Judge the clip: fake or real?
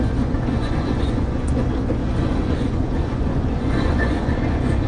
fake